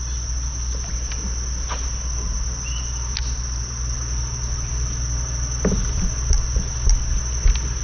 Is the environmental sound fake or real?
real